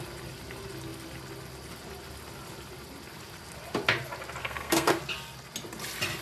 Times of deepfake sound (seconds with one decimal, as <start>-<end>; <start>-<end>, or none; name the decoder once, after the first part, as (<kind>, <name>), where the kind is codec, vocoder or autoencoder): 4.4-4.9 (codec, SNAC)